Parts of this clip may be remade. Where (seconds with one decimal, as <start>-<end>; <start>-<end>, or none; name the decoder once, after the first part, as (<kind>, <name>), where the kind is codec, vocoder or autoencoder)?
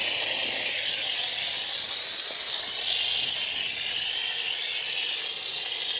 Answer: none